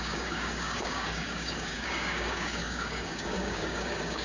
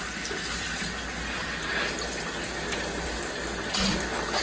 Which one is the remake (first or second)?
first